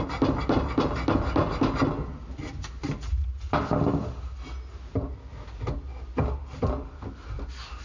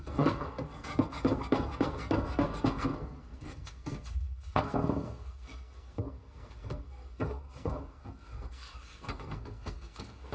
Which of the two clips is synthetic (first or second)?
second